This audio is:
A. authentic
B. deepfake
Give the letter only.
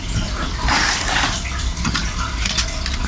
A